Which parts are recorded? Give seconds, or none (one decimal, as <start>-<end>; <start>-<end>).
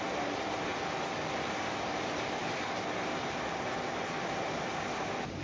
0.0-5.4